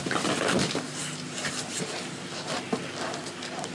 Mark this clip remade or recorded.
recorded